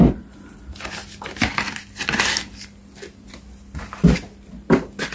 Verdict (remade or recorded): recorded